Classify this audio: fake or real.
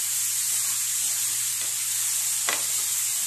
real